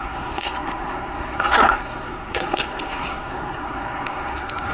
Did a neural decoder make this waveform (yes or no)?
yes